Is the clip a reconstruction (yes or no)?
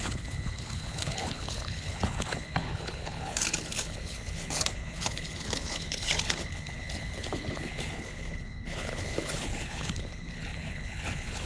yes